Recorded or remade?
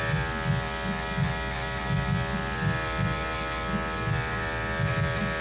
recorded